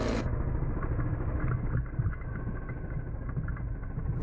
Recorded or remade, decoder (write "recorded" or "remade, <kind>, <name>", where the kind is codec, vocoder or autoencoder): recorded